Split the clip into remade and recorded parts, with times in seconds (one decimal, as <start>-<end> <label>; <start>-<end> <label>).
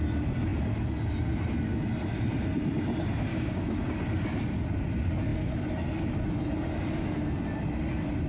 0.0-3.3 recorded; 3.3-3.8 remade; 3.8-8.3 recorded